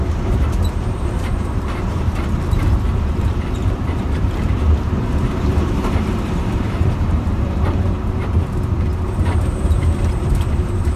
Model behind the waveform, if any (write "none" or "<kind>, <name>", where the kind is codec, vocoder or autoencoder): vocoder, BigVGAN v2